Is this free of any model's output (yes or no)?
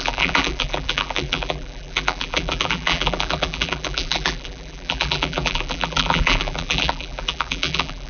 no